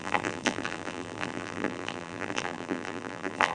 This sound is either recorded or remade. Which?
remade